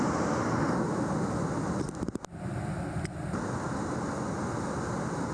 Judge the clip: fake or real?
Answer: real